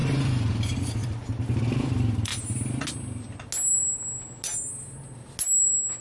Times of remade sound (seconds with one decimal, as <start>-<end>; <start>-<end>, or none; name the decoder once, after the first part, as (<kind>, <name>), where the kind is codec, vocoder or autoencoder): 0.0-2.3 (vocoder, BigVGAN v2)